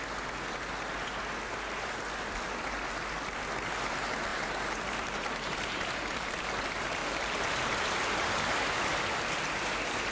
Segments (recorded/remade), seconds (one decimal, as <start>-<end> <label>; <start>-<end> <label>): 0.0-4.3 recorded; 4.3-6.3 remade; 6.3-7.0 recorded; 7.0-8.2 remade; 8.2-10.1 recorded